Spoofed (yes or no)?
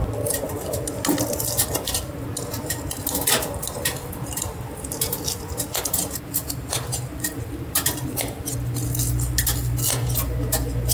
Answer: no